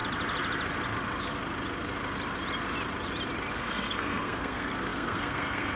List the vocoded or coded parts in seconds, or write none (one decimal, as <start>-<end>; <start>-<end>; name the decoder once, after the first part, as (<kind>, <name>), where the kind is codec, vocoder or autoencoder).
3.5-5.8 (codec, SNAC)